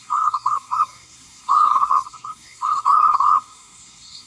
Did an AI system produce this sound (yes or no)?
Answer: yes